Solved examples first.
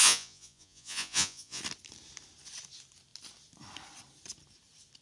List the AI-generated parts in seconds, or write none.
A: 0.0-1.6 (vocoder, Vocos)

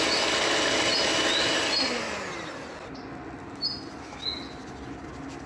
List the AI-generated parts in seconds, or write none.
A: none

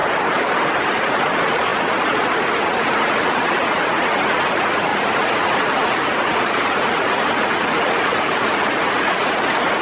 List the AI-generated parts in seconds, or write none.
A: 1.0-9.8 (vocoder, Vocos)

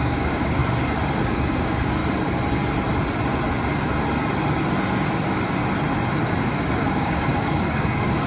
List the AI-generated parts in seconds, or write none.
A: 0.0-0.6 (codec, DAC); 1.2-2.0; 6.9-8.3

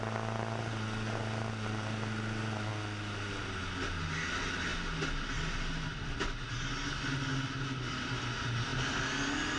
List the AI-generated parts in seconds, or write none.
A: none

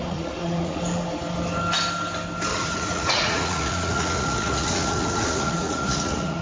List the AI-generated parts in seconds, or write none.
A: 0.0-0.8 (vocoder, Vocos); 2.5-6.4

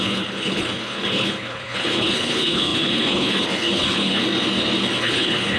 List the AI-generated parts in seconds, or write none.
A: 0.0-4.2 (codec, HILCodec); 5.0-5.6

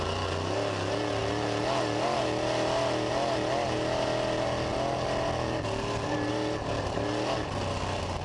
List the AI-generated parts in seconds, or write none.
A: none